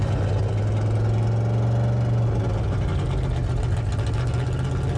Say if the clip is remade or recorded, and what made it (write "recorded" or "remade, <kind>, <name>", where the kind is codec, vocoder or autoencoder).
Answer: recorded